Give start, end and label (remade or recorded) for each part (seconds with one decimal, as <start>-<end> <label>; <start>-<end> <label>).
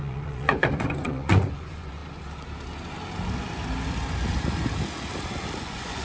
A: 0.0-2.0 remade; 2.0-5.6 recorded; 5.6-6.0 remade